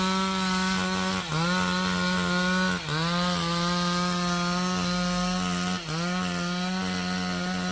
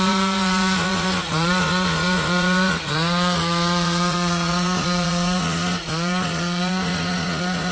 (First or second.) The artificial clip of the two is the second